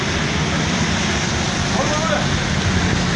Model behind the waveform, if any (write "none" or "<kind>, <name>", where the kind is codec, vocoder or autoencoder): none